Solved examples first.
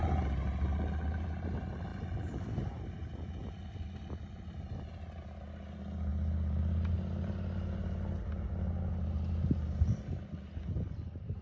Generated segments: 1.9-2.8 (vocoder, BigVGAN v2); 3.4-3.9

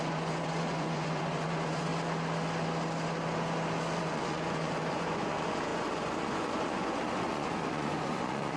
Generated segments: 0.0-1.9 (vocoder, Vocos); 4.0-8.6

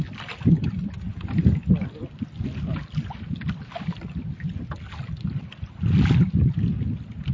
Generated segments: none

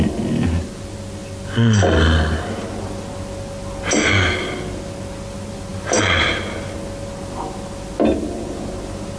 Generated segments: none

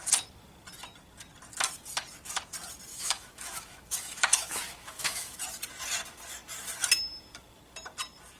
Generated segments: 2.9-5.4 (autoencoder, DAC-VAE)

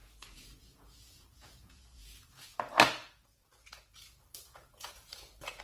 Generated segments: 0.0-2.5 (vocoder, Vocos); 3.0-5.6

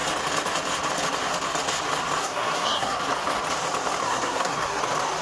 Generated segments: 2.2-3.0 (codec, SNAC); 4.0-4.8

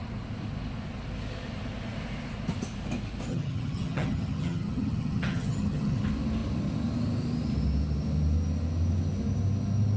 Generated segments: 3.3-6.0 (vocoder, HiFi-GAN)